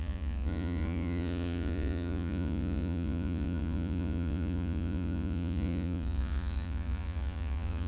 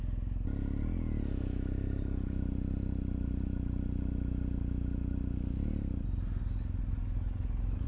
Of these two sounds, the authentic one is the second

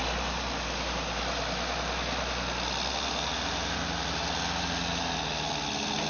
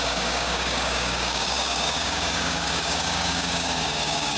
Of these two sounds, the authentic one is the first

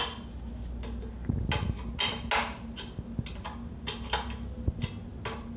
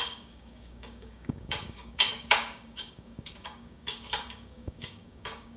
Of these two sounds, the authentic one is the first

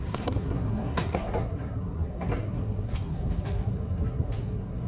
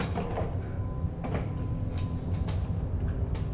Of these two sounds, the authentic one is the second